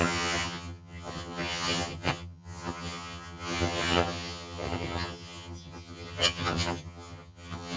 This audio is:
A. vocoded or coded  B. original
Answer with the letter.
A